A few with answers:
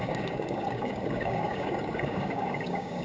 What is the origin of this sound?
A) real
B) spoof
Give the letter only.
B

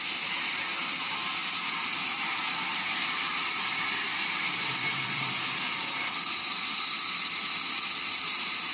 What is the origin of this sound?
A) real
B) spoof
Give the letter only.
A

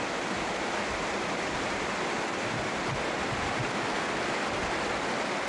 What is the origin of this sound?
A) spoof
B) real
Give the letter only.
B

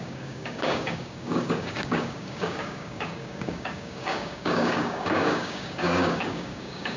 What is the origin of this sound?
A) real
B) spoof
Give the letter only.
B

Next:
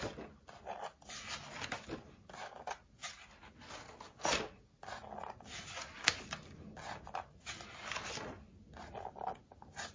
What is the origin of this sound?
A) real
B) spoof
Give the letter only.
A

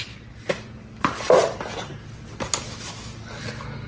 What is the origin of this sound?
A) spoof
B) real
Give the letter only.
B